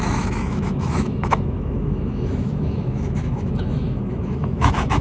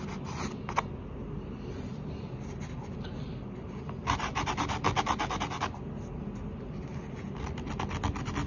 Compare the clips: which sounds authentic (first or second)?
second